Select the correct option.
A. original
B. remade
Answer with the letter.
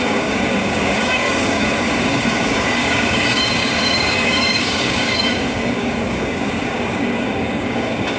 B